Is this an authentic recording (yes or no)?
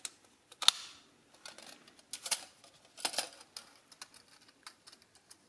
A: yes